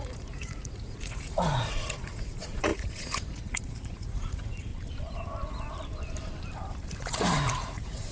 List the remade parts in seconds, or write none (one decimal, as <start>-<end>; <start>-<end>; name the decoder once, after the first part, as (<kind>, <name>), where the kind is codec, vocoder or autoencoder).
0.0-4.7 (vocoder, Vocos); 6.9-8.1